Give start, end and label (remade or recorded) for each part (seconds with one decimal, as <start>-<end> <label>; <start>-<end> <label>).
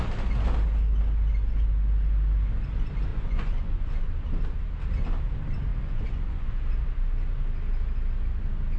0.0-3.1 recorded; 3.1-3.9 remade; 3.9-5.7 recorded; 5.7-6.5 remade; 6.5-8.8 recorded